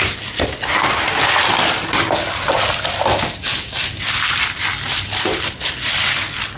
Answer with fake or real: real